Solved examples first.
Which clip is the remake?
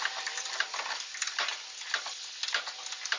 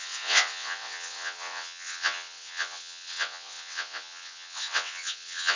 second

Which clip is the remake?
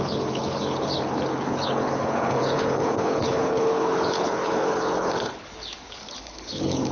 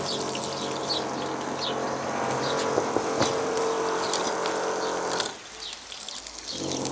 first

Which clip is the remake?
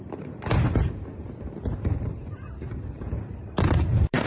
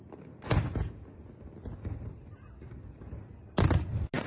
first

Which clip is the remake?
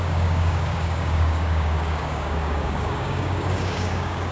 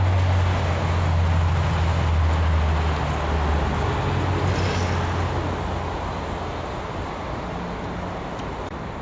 first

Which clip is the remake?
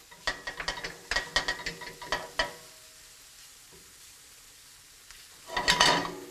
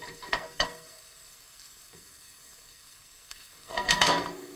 second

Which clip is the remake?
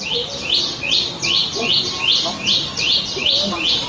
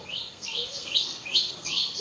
second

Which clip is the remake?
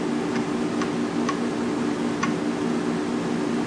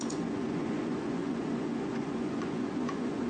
second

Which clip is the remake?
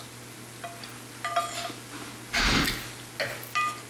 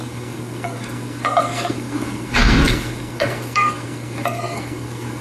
second